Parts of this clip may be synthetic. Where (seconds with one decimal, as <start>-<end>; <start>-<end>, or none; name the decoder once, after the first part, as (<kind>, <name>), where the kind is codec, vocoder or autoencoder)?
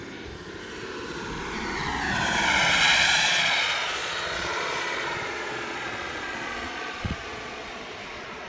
2.8-8.5 (vocoder, Vocos)